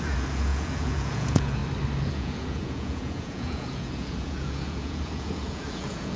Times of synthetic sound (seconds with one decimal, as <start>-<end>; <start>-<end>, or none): 0.0-1.6; 2.1-6.2